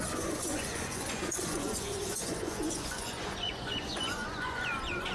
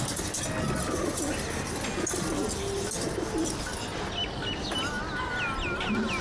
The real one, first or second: second